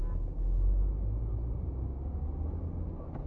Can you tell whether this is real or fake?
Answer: real